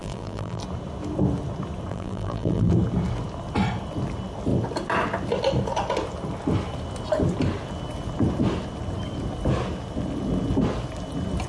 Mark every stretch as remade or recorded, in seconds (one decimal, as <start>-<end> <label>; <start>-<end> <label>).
0.0-0.6 remade; 0.6-1.9 recorded; 1.9-2.7 remade; 2.7-11.5 recorded